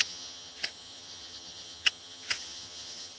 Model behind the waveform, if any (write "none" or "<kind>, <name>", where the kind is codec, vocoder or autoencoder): vocoder, HiFi-GAN